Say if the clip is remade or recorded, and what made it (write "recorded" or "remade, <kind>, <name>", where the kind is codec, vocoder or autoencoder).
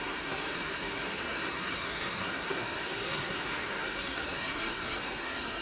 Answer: remade, codec, SNAC